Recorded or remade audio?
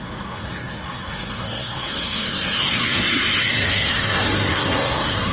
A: remade